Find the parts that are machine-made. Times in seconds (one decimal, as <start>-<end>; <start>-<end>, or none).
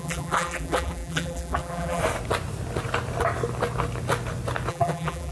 0.0-2.0; 4.7-5.3